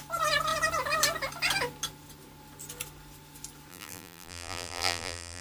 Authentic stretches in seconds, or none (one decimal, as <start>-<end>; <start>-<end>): 0.0-3.7